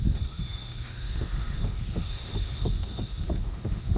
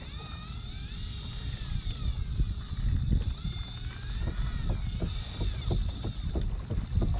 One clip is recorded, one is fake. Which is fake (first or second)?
first